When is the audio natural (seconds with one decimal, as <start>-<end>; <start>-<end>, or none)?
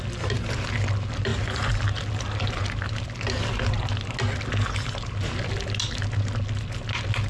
0.0-7.3